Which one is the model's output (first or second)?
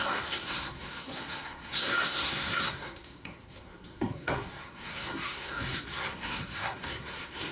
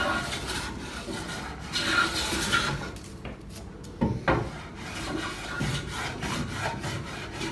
first